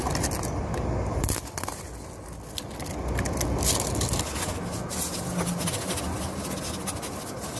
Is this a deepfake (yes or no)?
no